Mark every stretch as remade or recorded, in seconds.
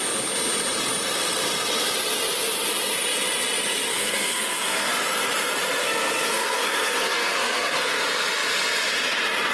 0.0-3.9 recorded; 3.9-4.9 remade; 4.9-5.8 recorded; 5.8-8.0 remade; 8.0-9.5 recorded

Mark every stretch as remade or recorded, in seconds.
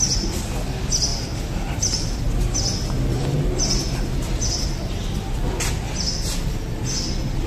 0.0-1.1 recorded; 1.1-2.2 remade; 2.2-3.2 recorded; 3.2-4.1 remade; 4.1-7.5 recorded